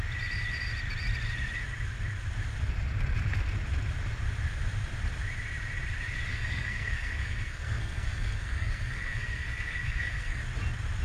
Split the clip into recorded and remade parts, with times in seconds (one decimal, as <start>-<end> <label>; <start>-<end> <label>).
0.0-6.3 recorded; 6.3-10.4 remade; 10.4-11.0 recorded